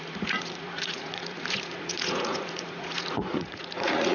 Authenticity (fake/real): fake